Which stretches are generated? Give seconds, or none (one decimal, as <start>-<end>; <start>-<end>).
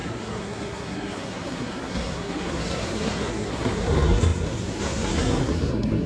0.0-6.1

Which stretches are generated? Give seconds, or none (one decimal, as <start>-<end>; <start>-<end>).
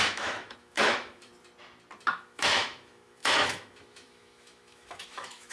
0.0-1.3; 2.1-5.5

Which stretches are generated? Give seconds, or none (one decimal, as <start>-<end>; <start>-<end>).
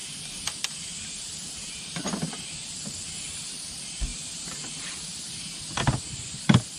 2.3-6.8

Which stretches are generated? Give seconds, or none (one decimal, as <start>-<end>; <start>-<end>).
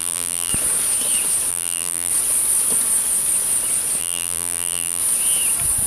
0.0-0.5; 1.5-2.1; 4.0-5.0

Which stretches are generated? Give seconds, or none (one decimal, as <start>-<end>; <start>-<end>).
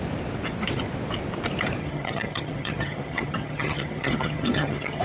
1.8-5.0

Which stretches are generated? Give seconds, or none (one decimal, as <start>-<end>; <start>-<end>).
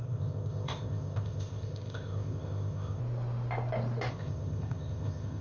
0.0-3.0; 4.1-5.4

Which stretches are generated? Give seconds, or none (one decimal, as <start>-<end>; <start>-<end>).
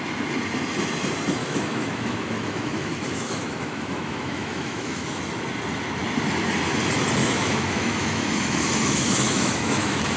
1.4-5.2; 7.2-10.2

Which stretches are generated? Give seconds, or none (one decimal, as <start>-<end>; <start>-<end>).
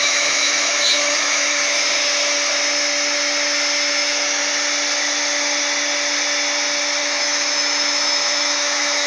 0.0-2.0; 3.9-4.4; 7.0-9.1